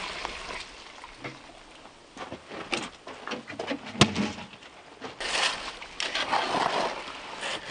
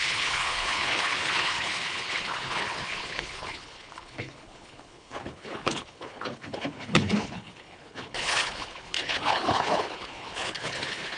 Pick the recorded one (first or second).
first